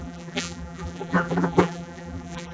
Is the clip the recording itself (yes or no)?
no